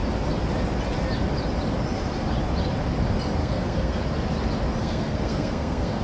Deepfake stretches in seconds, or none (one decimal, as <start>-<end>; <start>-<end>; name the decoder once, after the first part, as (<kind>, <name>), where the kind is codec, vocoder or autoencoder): 3.4-4.0 (codec, SNAC); 4.8-6.0